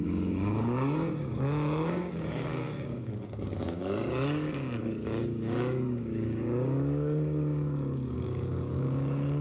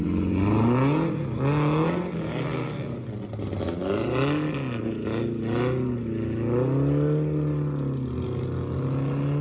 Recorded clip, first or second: second